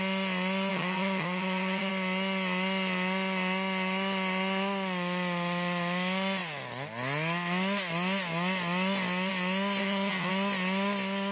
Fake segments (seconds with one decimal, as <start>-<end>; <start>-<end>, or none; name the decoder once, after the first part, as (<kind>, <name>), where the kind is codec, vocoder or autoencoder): 0.7-1.9 (vocoder, HiFi-GAN); 9.8-10.3